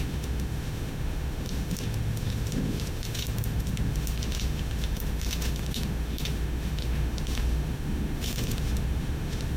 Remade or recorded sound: remade